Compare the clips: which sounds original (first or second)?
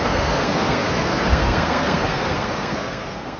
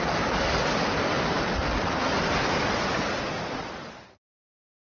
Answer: second